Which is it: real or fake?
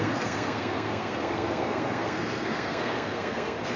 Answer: fake